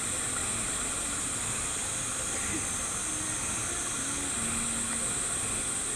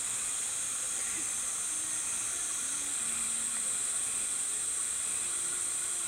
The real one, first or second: first